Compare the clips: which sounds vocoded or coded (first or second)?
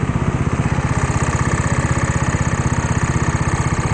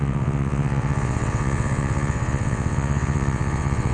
second